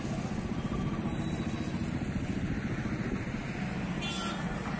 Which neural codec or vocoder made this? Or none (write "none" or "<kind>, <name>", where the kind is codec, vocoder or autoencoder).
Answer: none